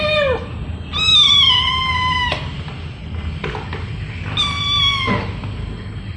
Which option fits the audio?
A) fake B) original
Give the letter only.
B